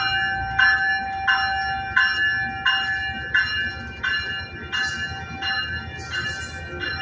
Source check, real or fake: real